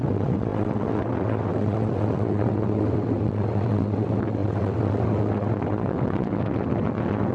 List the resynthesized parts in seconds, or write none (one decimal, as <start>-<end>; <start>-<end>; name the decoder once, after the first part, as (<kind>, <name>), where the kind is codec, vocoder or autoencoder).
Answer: 0.0-7.3 (vocoder, WaveNeXt)

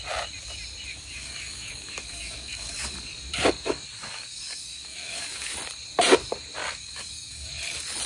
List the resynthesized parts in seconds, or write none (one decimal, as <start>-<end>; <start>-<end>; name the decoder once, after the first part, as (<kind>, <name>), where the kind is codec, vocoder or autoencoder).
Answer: 0.9-5.6 (codec, DAC); 6.6-7.5

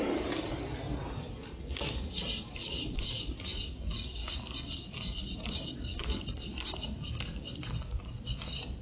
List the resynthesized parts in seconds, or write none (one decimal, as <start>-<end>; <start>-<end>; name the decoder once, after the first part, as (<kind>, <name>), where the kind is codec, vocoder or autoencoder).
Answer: 2.6-3.1 (vocoder, BigVGAN v2); 4.2-8.4

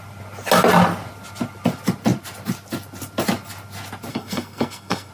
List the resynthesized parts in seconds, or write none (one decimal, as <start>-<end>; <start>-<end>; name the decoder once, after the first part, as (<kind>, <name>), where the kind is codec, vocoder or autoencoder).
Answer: 4.1-5.1 (codec, SNAC)

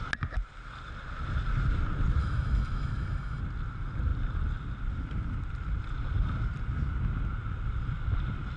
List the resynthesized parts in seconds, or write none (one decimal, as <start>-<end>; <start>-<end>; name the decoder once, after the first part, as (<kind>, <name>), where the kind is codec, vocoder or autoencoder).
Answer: 2.2-3.4 (autoencoder, DAC-VAE)

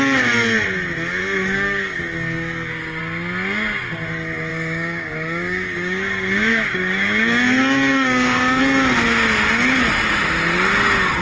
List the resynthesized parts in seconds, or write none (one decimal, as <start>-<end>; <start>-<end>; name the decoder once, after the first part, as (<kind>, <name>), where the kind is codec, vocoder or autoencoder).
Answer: 1.2-3.0 (codec, DAC); 4.5-8.6